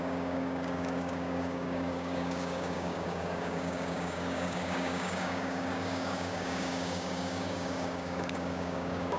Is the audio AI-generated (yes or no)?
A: yes